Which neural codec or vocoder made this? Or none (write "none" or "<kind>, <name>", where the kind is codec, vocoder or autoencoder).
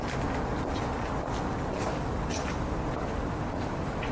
none